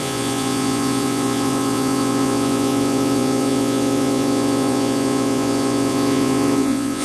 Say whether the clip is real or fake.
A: fake